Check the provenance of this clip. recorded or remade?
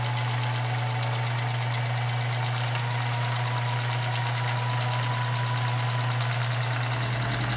recorded